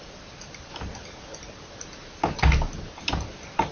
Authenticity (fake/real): real